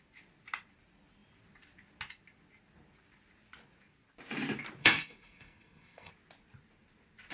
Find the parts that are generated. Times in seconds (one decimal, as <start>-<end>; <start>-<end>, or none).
4.8-6.1